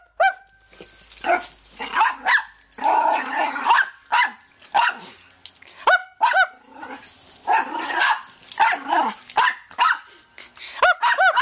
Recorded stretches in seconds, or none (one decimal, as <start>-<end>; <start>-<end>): 0.0-11.4